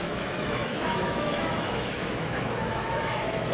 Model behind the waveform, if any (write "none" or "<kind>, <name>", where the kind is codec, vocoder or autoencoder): autoencoder, DAC-VAE